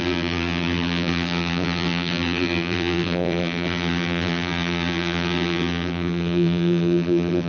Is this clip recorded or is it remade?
remade